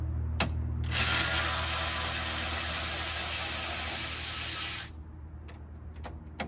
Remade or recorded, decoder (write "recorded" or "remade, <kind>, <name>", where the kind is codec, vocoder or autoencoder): recorded